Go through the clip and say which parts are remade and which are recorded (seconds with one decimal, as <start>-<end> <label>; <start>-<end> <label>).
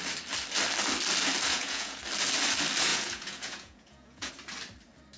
0.0-1.5 recorded; 1.5-2.0 remade; 2.0-2.9 recorded; 2.9-4.3 remade; 4.3-5.2 recorded